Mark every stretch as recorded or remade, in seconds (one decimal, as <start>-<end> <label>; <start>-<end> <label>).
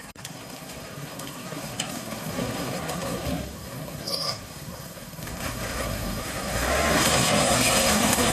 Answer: 0.0-8.3 remade